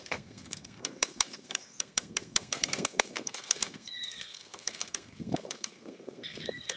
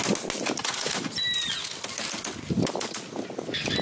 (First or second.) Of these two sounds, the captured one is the second